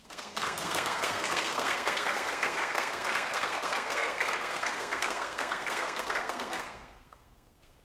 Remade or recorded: remade